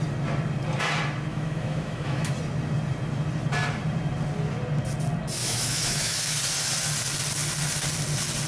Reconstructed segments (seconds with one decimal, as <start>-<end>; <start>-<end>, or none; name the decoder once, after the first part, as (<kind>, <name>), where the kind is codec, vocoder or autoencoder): 1.3-2.3 (autoencoder, DAC-VAE); 5.4-6.4